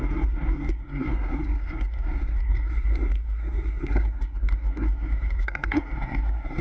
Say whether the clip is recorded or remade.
remade